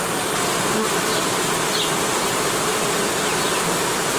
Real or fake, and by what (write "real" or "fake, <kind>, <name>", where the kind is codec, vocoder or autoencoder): fake, vocoder, BigVGAN v2